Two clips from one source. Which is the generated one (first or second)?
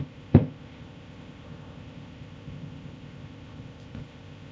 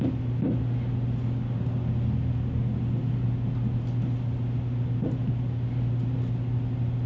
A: first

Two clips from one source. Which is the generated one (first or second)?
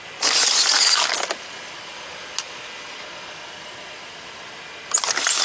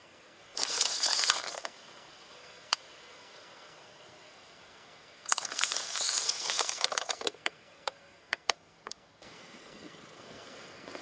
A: second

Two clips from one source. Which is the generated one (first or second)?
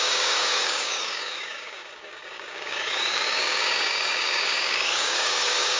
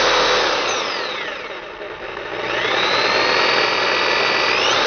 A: first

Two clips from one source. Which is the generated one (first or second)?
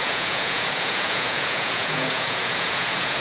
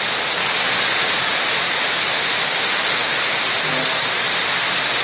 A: first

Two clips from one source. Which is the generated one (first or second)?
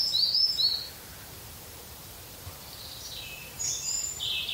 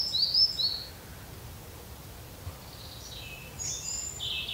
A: first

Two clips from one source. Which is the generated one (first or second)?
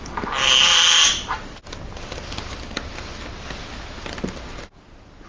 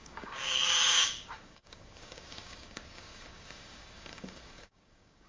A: second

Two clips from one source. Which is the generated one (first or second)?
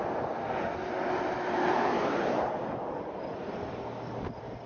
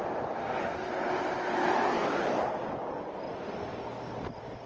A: second